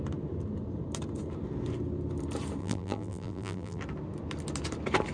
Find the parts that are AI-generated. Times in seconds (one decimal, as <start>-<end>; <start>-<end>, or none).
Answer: 2.6-3.8